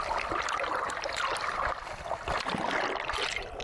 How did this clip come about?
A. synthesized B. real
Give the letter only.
B